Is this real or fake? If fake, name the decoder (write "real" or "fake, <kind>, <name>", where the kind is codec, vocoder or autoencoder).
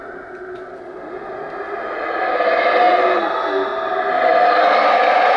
real